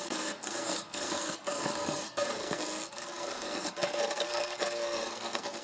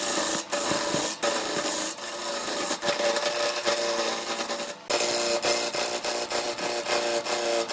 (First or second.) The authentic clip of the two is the second